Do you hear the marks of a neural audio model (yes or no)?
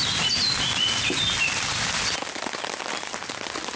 no